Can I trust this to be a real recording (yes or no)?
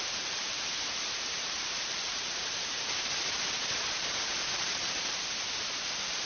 no